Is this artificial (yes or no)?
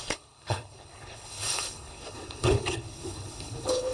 yes